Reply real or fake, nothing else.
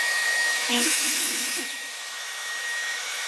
fake